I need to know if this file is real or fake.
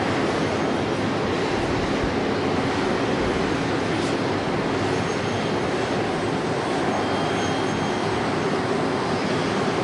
real